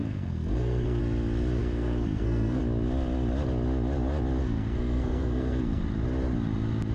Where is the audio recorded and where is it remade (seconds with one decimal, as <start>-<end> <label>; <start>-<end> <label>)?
0.0-1.0 remade; 1.0-1.6 recorded; 1.6-2.6 remade; 2.6-4.4 recorded; 4.4-5.8 remade; 5.8-6.9 recorded